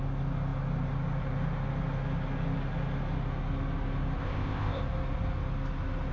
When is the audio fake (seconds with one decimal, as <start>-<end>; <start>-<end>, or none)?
4.2-4.8